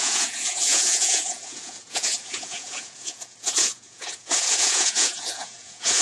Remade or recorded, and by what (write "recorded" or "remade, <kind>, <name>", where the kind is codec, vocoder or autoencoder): remade, vocoder, Vocos